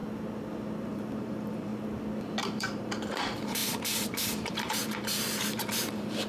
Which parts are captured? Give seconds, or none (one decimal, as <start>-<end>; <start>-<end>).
0.0-0.8; 1.7-2.4